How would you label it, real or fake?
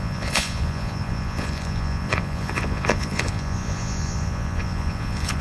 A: fake